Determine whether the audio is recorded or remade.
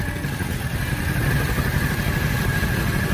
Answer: recorded